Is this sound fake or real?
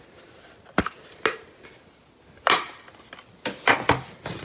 real